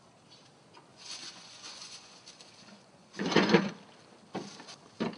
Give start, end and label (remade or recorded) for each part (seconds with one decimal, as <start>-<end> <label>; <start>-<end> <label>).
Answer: 0.0-0.9 recorded; 0.9-3.7 remade; 3.7-5.2 recorded